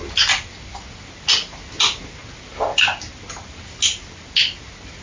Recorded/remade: recorded